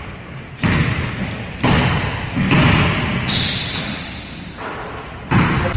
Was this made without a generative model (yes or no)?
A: yes